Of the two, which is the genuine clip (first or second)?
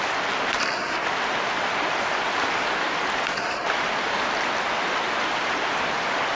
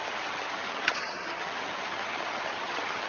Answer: first